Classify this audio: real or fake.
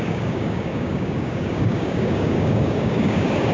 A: fake